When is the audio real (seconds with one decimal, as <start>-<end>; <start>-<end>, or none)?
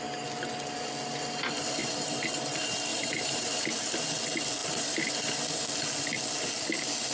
0.0-1.8; 2.3-2.9; 3.9-4.6; 5.1-7.1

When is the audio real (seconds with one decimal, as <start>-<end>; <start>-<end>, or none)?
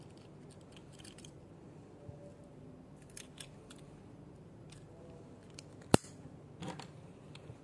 0.0-0.8; 1.5-2.4; 5.0-7.6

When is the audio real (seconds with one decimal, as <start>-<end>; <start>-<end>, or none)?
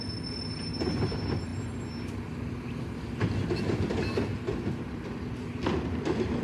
0.0-6.4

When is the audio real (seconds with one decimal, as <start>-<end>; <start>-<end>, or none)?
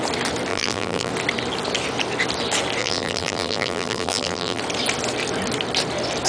0.0-0.5; 1.1-2.8; 4.6-6.3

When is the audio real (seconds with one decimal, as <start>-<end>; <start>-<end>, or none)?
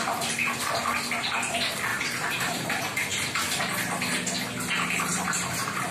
0.0-1.9; 2.7-5.1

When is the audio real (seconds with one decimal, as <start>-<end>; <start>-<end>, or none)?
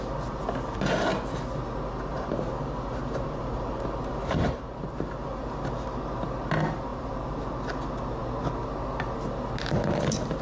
0.0-2.1; 5.8-6.9; 7.5-10.4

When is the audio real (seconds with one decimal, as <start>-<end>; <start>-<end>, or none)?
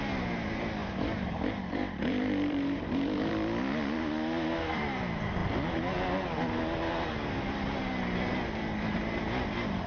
0.0-0.8; 3.3-9.9